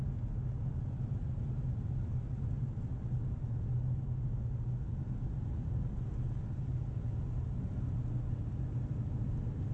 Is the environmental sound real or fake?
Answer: real